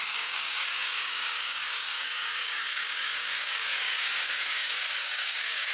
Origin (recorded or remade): remade